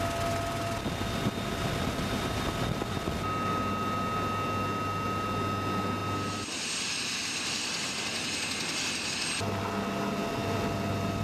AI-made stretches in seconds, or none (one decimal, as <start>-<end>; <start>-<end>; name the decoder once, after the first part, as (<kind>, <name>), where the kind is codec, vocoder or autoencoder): none